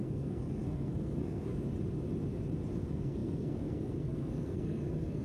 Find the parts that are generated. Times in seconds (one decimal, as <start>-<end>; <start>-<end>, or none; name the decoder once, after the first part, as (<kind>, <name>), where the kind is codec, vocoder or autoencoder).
0.0-1.5 (codec, SNAC); 2.8-5.2